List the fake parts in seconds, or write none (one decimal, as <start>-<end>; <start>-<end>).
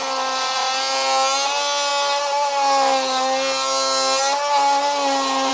none